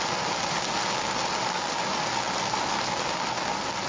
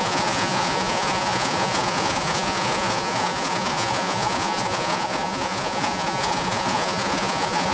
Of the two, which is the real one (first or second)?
first